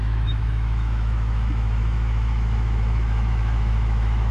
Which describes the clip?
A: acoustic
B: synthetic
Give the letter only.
B